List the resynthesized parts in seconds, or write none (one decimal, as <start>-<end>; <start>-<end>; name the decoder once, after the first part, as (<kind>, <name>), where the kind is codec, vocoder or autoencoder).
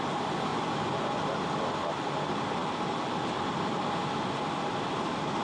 0.5-1.2 (vocoder, Vocos)